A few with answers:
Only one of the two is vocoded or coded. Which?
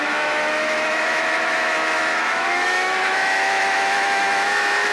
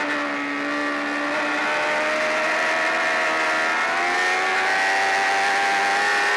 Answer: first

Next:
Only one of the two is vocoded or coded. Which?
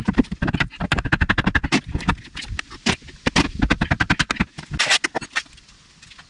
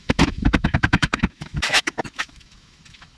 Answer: second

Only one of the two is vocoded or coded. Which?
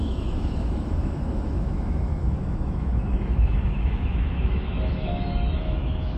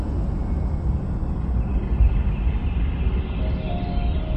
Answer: first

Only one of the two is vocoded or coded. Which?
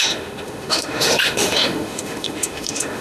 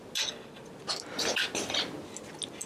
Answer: first